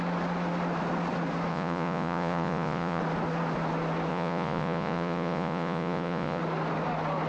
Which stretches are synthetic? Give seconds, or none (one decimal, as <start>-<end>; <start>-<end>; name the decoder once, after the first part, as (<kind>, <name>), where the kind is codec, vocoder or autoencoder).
1.5-3.0 (vocoder, Vocos); 4.1-6.4